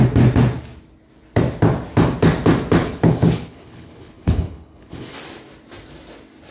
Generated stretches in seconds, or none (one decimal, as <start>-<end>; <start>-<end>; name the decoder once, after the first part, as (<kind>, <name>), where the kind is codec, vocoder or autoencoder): 2.8-5.2 (codec, HILCodec)